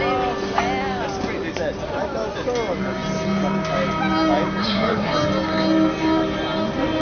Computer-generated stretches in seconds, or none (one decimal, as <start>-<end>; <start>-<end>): 4.6-5.1